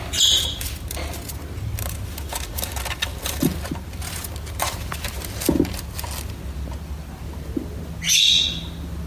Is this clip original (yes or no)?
yes